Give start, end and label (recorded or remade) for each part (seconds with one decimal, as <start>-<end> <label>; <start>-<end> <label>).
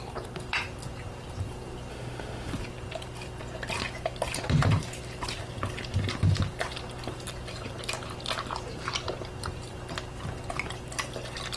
0.0-1.9 recorded; 1.9-2.5 remade; 2.5-11.6 recorded